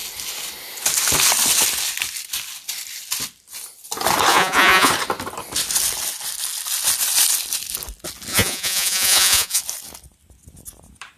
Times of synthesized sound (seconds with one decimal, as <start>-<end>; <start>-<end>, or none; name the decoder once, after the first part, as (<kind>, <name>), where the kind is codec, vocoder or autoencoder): 4.3-4.9 (vocoder, Vocos); 8.3-9.6